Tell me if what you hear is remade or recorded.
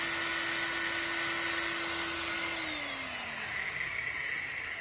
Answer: recorded